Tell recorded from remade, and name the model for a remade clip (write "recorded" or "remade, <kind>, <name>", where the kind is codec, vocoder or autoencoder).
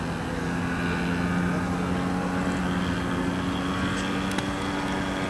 recorded